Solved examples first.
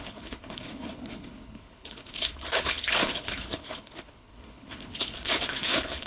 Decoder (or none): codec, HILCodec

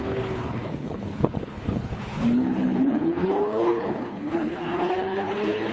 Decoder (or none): codec, HILCodec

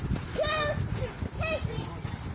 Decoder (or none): none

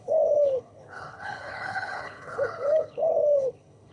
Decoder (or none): codec, HILCodec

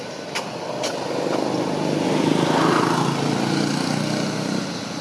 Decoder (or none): none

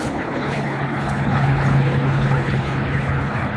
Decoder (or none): codec, HILCodec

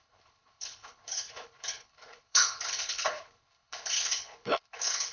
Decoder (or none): codec, HILCodec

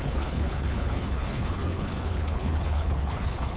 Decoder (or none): codec, HILCodec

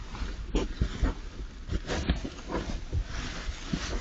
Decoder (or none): none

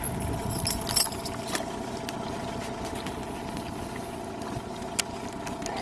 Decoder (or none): none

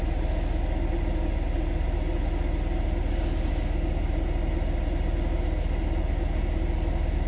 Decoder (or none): none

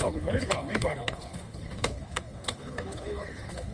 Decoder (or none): codec, HILCodec